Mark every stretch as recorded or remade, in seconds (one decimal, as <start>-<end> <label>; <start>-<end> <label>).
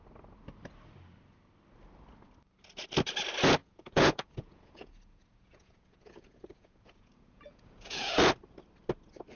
0.0-3.6 recorded; 3.6-8.2 remade; 8.2-9.4 recorded